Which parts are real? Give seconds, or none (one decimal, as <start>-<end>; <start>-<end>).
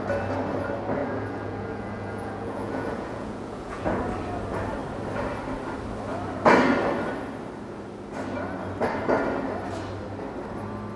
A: 0.0-1.0; 4.0-11.0